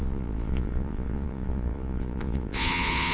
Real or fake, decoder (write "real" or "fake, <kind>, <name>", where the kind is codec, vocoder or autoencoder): fake, vocoder, Vocos